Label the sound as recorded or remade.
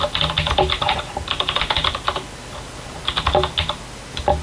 recorded